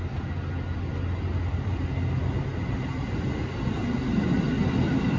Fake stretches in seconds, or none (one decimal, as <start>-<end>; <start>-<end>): none